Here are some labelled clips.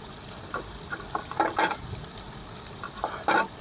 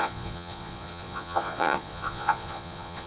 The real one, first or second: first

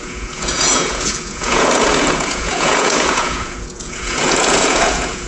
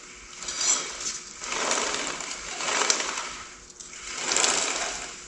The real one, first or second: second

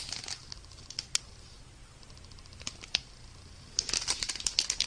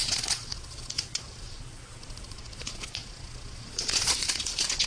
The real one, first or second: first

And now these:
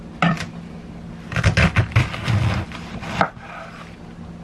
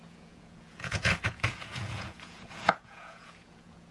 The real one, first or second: first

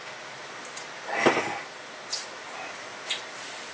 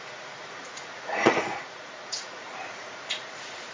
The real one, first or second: first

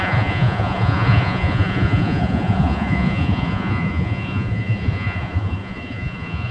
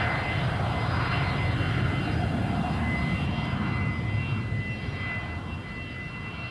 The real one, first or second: second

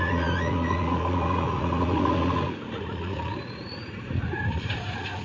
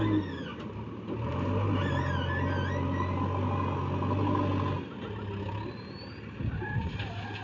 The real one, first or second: second